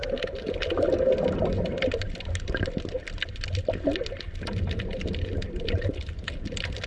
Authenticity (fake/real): real